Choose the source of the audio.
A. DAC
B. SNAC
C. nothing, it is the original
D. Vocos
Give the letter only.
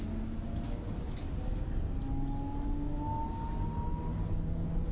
C